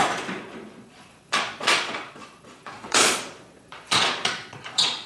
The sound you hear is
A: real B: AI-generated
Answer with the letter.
B